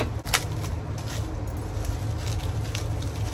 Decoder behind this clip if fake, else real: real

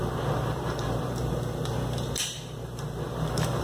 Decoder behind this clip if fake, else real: fake, vocoder, BigVGAN v2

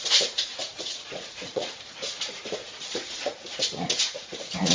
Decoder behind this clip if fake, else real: fake, vocoder, Vocos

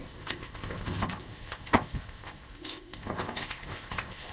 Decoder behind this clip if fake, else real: fake, codec, ZipCodec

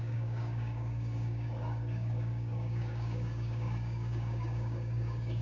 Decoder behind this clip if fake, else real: fake, codec, DAC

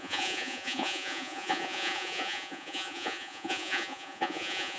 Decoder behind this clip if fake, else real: fake, vocoder, Vocos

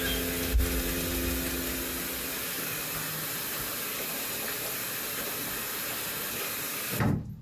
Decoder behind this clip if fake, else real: real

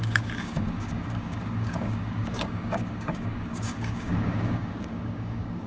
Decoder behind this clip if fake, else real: fake, codec, DAC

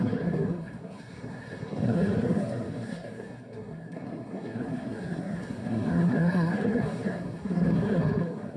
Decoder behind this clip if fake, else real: fake, codec, SNAC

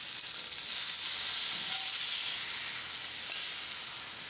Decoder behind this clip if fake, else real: real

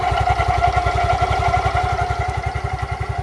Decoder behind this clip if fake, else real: real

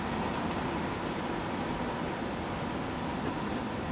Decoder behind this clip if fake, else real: real